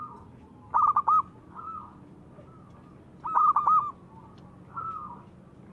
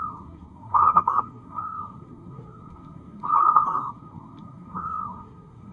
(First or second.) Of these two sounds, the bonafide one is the first